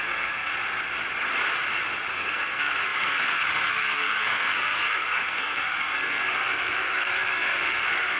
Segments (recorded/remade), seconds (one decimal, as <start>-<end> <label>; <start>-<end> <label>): 0.0-0.5 remade; 0.5-2.1 recorded; 2.1-8.2 remade